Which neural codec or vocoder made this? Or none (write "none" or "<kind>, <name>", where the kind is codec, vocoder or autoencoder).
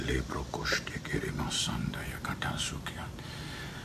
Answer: none